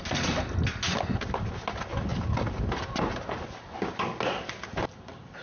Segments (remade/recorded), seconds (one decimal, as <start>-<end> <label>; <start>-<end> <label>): 0.0-5.4 recorded